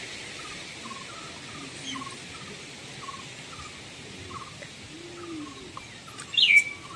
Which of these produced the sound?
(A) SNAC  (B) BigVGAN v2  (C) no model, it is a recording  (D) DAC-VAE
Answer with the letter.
C